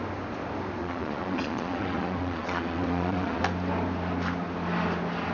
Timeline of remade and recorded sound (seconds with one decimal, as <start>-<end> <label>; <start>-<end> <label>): 0.0-0.8 recorded; 0.8-3.4 remade; 3.4-5.3 recorded